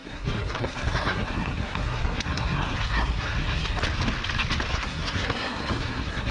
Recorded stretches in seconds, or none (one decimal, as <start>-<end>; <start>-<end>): 3.8-4.7